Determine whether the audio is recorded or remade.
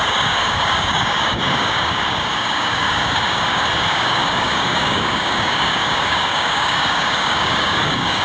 remade